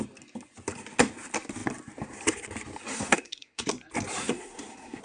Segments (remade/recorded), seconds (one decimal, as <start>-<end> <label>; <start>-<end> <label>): 0.0-2.9 recorded; 2.9-3.7 remade; 3.7-4.2 recorded; 4.2-5.0 remade